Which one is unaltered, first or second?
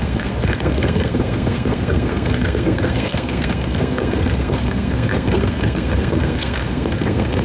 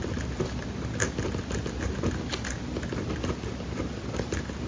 second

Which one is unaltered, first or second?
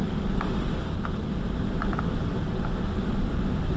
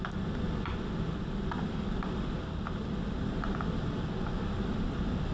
first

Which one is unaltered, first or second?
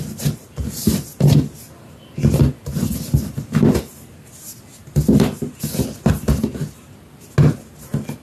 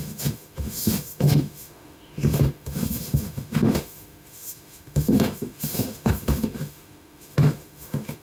first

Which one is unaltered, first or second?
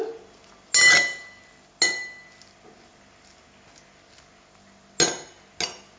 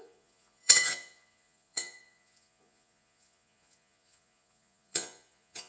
first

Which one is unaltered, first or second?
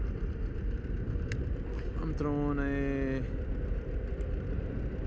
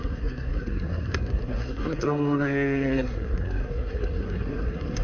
first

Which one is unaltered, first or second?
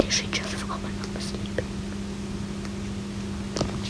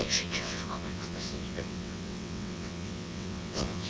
first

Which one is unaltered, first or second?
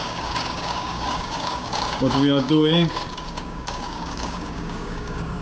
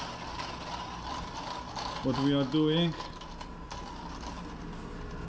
second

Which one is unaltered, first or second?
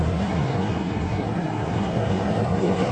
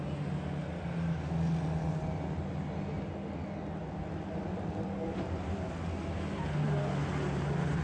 second